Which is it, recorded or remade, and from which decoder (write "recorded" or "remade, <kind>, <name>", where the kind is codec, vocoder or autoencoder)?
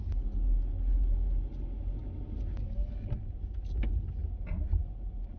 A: recorded